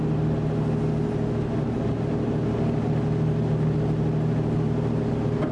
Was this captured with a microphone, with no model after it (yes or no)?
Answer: yes